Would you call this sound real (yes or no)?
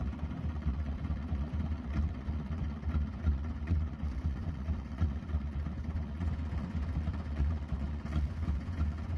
no